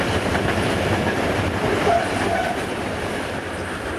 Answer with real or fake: fake